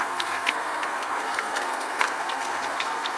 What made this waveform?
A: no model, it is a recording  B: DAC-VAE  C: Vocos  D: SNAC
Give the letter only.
D